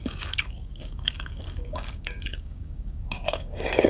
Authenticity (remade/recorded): remade